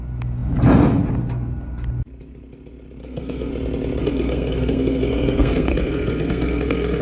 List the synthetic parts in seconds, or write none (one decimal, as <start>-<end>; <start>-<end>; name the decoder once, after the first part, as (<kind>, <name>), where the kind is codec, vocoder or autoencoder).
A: 3.0-3.5 (codec, SNAC); 4.0-7.0